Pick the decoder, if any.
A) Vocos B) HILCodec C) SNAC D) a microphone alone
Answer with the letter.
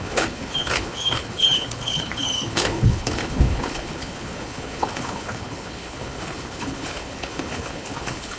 B